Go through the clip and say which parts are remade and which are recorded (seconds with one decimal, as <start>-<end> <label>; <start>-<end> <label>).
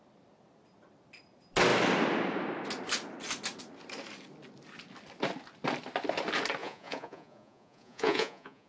0.0-6.6 recorded; 6.6-8.7 remade